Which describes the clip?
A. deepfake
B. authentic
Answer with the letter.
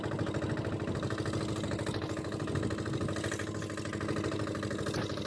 B